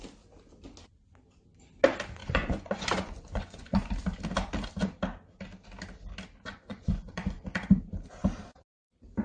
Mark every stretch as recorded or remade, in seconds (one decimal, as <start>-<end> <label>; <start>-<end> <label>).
0.0-2.2 recorded; 2.2-3.9 remade; 3.9-6.5 recorded; 6.5-7.7 remade; 7.7-9.2 recorded